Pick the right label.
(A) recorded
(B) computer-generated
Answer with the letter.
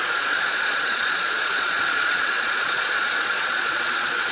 B